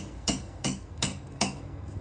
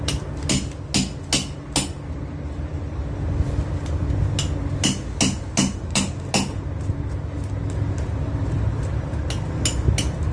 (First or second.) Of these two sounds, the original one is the second